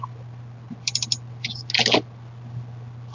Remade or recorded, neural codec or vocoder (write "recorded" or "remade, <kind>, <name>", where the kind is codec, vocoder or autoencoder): recorded